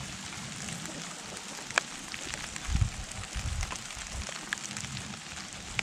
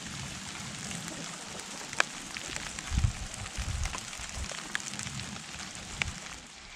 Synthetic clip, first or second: second